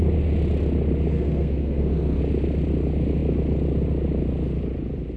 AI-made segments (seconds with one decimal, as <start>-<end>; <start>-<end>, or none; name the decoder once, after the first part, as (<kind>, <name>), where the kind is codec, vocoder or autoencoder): 1.1-2.2 (codec, SNAC)

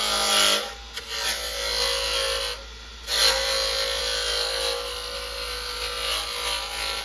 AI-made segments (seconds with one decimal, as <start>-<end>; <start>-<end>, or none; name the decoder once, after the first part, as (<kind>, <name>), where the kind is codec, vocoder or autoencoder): none

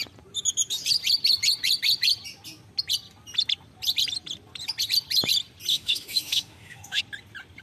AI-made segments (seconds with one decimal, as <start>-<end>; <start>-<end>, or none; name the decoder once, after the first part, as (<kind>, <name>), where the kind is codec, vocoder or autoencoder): 5.7-7.0 (autoencoder, DAC-VAE)

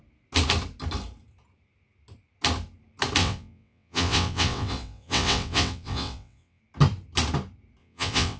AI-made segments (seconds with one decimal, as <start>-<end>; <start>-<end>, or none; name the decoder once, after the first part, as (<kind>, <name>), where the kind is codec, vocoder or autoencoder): 3.2-6.6 (vocoder, WaveNeXt); 7.8-8.4

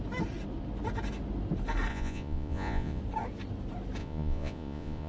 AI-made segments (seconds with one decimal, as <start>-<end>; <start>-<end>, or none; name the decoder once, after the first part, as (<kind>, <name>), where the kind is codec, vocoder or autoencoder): 1.9-3.0 (vocoder, Vocos); 4.0-5.1